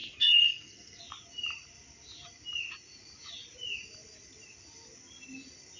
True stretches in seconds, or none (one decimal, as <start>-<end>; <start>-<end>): 1.0-5.8